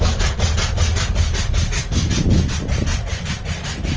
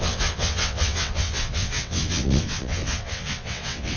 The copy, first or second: second